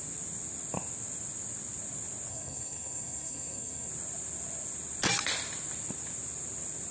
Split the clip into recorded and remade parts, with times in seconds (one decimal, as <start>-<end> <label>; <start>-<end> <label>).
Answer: 0.0-2.3 recorded; 2.3-3.9 remade; 3.9-6.9 recorded